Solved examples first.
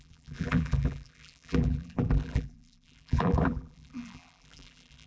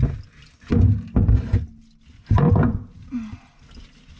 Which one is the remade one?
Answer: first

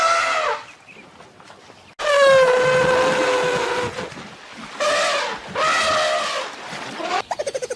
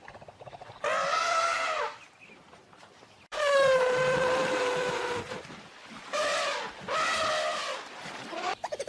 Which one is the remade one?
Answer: second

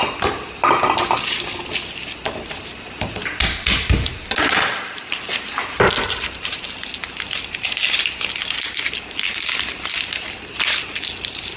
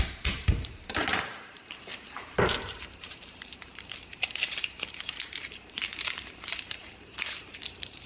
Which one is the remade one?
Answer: second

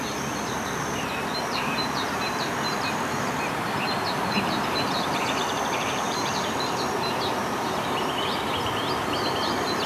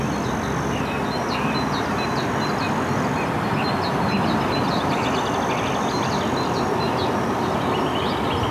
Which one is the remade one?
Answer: first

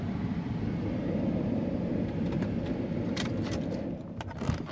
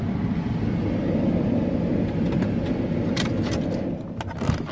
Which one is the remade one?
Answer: first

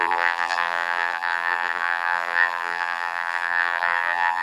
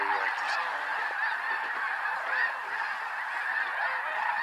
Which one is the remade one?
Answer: first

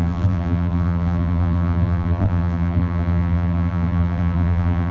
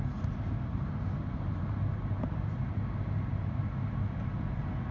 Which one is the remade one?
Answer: first